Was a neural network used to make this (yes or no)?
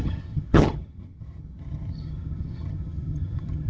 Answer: yes